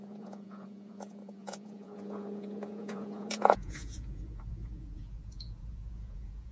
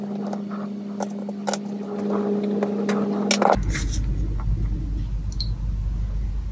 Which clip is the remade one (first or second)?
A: first